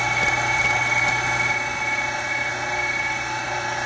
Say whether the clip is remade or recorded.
recorded